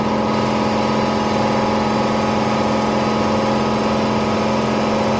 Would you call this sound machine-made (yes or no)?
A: no